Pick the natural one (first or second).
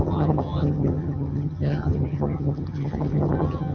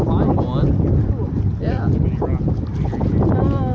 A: second